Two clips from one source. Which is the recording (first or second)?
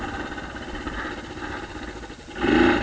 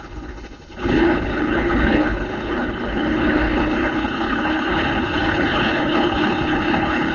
first